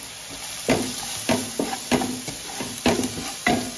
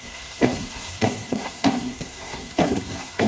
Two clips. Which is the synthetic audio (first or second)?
second